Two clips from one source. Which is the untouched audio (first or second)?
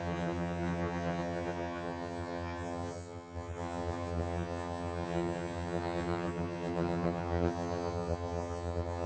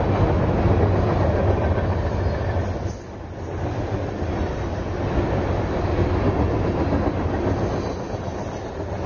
second